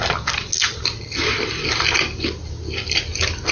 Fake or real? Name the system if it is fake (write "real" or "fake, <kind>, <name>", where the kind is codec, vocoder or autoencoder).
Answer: real